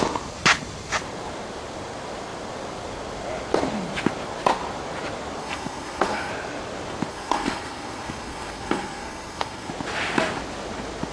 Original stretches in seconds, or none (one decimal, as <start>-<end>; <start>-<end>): 0.0-5.4; 6.3-7.1; 9.7-11.1